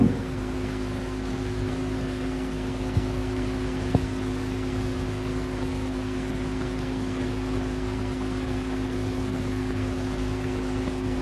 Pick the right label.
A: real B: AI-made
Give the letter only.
B